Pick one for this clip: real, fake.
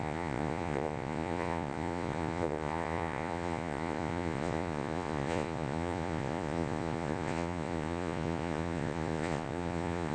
fake